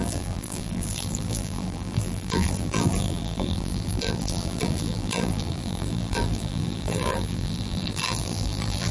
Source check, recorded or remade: remade